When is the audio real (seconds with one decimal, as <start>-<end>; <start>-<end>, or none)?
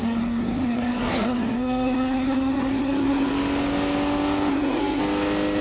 3.3-4.5; 5.0-5.6